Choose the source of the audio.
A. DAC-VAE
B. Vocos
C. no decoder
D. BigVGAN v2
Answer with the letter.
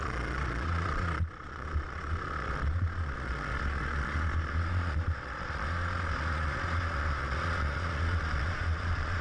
B